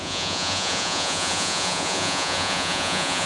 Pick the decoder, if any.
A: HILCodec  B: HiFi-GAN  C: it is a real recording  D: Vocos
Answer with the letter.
D